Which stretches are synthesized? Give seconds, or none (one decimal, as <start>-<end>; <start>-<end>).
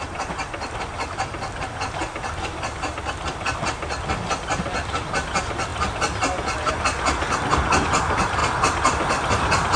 none